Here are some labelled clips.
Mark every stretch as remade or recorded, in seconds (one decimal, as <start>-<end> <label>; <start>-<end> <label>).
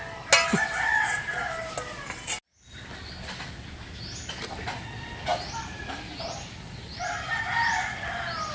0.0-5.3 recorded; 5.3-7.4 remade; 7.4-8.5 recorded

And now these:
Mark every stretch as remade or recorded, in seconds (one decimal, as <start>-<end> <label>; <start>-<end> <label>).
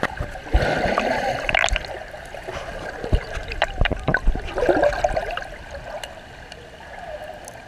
0.0-3.4 recorded; 3.4-4.5 remade; 4.5-7.7 recorded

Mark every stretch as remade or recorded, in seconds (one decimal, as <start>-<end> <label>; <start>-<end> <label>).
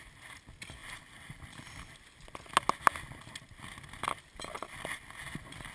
0.0-5.7 recorded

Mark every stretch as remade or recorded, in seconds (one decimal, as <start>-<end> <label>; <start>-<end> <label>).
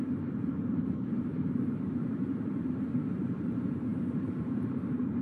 0.0-5.2 remade